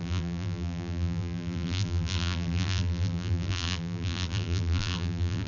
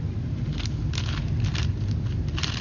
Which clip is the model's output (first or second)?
first